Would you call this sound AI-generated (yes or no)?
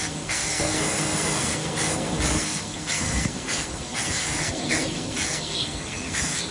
yes